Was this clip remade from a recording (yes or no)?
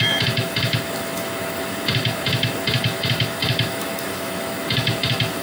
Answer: yes